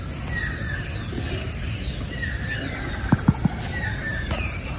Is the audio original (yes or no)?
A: yes